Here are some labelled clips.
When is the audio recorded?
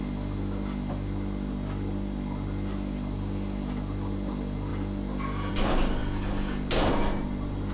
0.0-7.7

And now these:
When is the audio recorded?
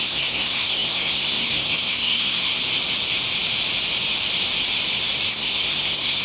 2.6-5.3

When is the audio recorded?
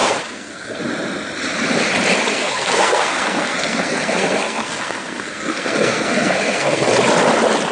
0.8-2.3; 6.9-7.7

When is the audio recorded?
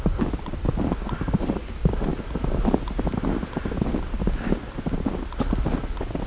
0.0-6.3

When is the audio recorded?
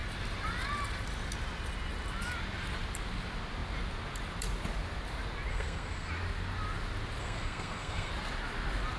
0.0-5.5; 6.1-7.2; 8.1-9.0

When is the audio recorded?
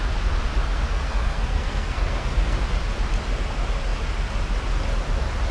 0.0-0.6; 2.6-5.5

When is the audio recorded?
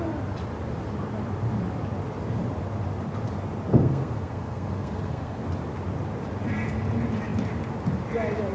0.0-3.7; 5.4-8.5